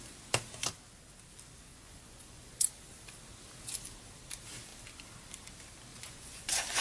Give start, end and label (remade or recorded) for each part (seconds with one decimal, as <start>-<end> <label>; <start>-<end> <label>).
0.0-1.7 recorded; 1.7-2.7 remade; 2.7-5.9 recorded; 5.9-6.8 remade